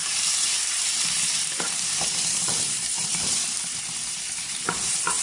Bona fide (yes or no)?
no